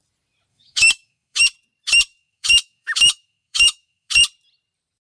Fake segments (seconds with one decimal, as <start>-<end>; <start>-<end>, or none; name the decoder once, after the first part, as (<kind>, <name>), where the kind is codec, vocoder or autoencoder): 0.5-1.4 (autoencoder, DAC-VAE); 2.1-4.1